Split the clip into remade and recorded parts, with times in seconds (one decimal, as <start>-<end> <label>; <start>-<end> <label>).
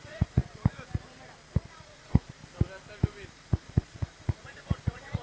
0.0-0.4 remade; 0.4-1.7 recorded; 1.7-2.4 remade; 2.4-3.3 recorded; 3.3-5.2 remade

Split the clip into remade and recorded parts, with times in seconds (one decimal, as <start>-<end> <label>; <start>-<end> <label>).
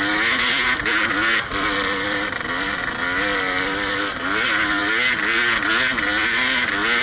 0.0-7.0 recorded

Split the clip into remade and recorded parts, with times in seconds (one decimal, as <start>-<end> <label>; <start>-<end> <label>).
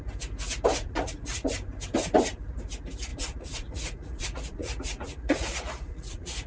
0.0-0.7 recorded; 0.7-1.5 remade; 1.5-3.1 recorded; 3.1-6.5 remade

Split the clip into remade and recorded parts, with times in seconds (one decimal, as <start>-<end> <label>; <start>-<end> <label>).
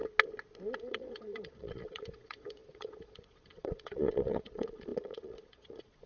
0.0-0.8 recorded; 0.8-6.1 remade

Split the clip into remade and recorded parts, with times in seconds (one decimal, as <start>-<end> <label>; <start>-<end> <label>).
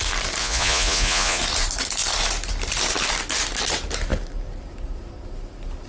0.0-0.4 recorded; 0.4-1.4 remade; 1.4-5.9 recorded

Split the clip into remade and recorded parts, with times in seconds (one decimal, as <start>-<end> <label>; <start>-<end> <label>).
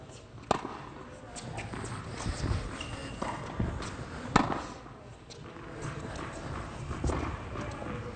0.0-8.2 recorded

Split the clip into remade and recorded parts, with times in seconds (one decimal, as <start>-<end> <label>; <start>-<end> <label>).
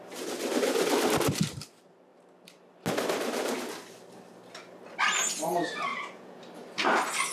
0.0-5.9 recorded; 5.9-6.4 remade; 6.4-7.3 recorded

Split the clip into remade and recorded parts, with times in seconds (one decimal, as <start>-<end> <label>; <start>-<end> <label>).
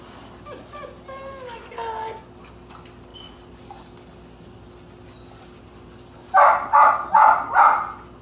0.0-8.2 recorded